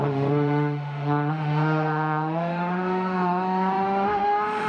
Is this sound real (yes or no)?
no